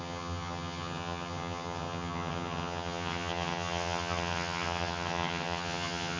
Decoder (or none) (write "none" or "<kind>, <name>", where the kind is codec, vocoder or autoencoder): vocoder, HiFi-GAN